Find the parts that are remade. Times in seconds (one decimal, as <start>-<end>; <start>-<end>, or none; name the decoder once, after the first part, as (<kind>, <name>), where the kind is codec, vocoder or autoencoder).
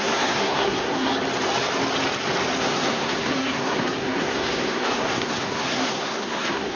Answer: 0.0-1.1 (codec, SNAC); 2.6-6.8